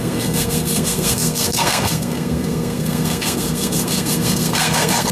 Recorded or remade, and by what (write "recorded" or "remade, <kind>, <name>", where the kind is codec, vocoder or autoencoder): remade, codec, SNAC